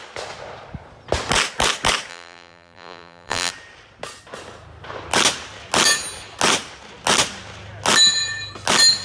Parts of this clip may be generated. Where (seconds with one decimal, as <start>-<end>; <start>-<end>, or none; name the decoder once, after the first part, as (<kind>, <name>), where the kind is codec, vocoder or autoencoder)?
2.1-3.5 (vocoder, BigVGAN v2)